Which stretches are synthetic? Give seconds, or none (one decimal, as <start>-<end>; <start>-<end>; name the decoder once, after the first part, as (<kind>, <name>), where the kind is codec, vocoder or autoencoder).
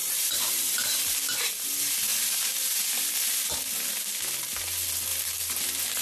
0.0-1.2 (vocoder, BigVGAN v2); 5.1-6.0